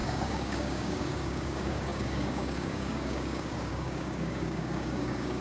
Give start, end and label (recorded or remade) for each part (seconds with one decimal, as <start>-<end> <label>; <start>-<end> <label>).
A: 0.0-5.4 remade